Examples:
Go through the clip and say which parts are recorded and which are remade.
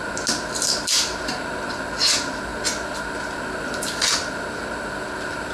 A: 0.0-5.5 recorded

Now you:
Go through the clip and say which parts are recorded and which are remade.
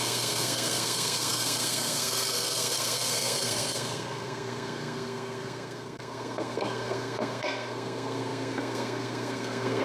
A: 0.0-9.8 remade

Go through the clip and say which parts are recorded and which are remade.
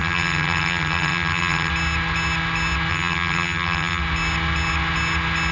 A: 0.0-1.7 remade; 1.7-2.9 recorded; 2.9-4.0 remade; 4.0-5.5 recorded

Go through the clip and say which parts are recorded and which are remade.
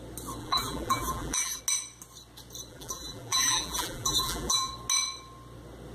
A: 0.0-0.4 recorded; 0.4-1.6 remade; 1.6-2.7 recorded; 2.7-4.7 remade; 4.7-5.9 recorded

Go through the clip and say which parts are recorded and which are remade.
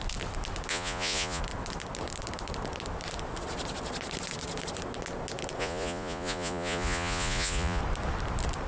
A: 0.0-0.7 recorded; 0.7-1.4 remade; 1.4-5.6 recorded; 5.6-7.8 remade; 7.8-8.7 recorded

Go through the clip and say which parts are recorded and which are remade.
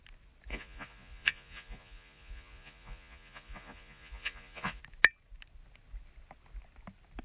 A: 0.0-0.5 recorded; 0.5-4.8 remade; 4.8-7.2 recorded